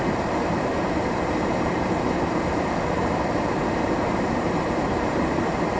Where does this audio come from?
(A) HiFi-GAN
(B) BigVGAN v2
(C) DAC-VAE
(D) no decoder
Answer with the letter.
B